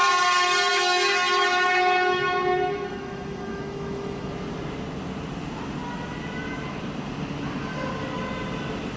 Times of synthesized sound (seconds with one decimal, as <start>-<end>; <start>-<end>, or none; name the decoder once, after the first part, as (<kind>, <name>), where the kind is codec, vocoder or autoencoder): 0.7-4.3 (autoencoder, DAC-VAE)